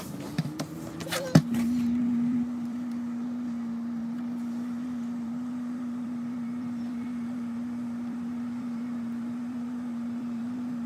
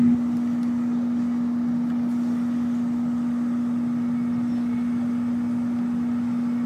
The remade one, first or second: first